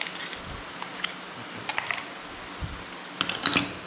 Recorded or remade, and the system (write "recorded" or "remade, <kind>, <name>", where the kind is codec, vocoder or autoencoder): recorded